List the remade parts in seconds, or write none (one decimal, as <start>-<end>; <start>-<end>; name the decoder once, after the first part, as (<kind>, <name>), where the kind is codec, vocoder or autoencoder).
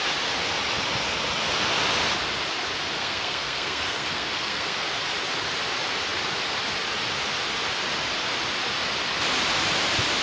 3.0-4.9 (codec, SNAC)